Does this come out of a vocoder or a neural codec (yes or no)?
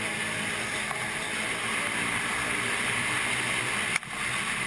no